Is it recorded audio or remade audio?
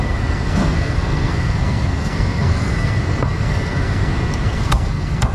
remade